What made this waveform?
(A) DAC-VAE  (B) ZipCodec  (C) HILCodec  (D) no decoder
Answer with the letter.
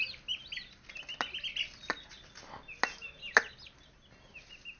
D